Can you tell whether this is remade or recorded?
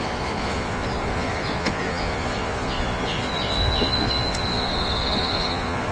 remade